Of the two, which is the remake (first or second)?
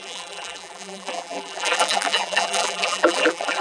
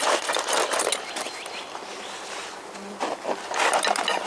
first